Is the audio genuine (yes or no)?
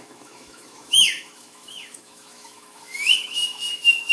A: no